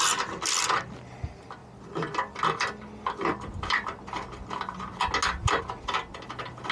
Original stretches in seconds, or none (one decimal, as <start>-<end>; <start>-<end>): 0.0-6.7